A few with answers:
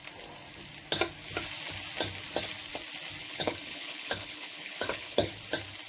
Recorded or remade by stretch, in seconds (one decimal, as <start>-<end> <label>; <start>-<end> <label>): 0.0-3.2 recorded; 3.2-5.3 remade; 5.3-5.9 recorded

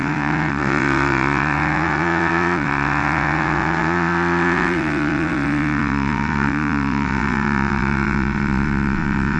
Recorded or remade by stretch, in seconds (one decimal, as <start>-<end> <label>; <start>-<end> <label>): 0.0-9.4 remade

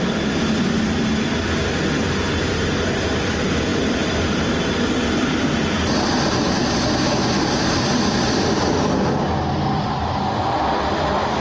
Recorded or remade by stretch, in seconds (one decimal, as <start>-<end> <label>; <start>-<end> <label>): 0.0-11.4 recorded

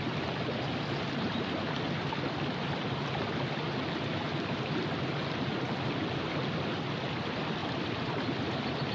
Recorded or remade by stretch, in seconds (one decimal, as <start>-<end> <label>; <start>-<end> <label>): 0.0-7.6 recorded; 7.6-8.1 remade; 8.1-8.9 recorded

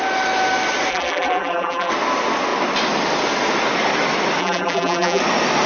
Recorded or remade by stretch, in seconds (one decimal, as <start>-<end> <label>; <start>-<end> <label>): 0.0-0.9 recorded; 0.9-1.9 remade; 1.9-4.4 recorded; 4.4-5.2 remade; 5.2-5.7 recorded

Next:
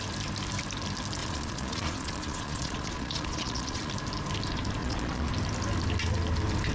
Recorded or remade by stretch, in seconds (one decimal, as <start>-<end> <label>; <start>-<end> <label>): 0.0-1.2 recorded; 1.2-3.9 remade; 3.9-4.8 recorded; 4.8-5.3 remade; 5.3-6.7 recorded

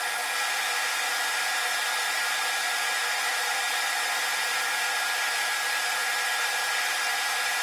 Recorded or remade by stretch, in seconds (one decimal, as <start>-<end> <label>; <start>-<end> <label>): 0.0-7.6 recorded

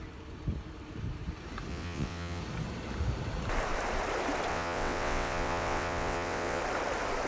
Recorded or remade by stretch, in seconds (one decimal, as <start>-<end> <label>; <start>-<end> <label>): 0.0-1.7 recorded; 1.7-2.4 remade; 2.4-4.5 recorded; 4.5-6.6 remade; 6.6-7.3 recorded